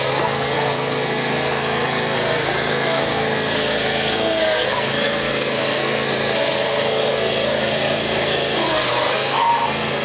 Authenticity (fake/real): fake